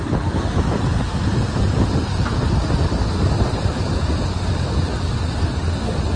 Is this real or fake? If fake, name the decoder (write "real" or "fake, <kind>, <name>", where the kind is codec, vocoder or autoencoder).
real